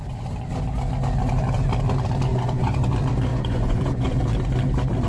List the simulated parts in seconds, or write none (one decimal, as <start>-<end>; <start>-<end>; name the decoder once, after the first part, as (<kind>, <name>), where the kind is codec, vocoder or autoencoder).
2.3-2.9 (vocoder, Vocos); 3.3-4.2